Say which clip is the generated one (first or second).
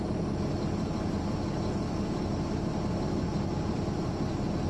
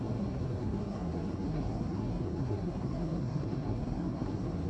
second